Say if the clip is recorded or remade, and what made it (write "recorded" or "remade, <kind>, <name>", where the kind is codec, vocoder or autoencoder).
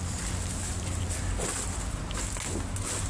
recorded